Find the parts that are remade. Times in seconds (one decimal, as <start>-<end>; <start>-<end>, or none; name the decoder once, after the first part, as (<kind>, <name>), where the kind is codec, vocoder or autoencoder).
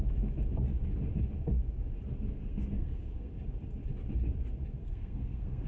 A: 2.4-3.3 (codec, SNAC); 4.8-5.7